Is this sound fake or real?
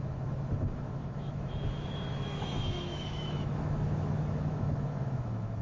fake